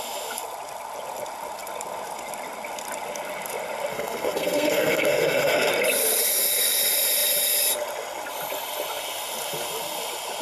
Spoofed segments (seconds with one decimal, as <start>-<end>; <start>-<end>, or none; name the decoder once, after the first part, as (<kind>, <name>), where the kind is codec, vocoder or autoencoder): 3.9-5.7 (codec, SNAC)